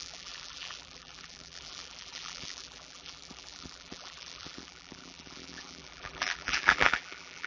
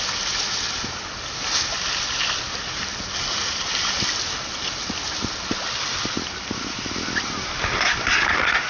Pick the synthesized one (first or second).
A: first